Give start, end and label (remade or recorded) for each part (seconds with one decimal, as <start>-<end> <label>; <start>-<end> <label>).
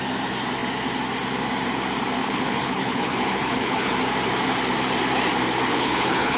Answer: 0.0-2.2 recorded; 2.2-3.9 remade; 3.9-5.7 recorded; 5.7-6.4 remade